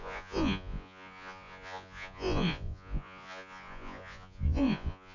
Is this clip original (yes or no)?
no